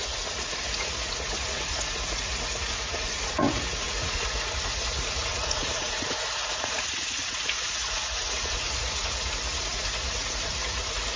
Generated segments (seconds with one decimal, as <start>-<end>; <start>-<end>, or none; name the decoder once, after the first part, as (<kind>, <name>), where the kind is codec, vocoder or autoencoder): 0.0-11.2 (vocoder, Vocos)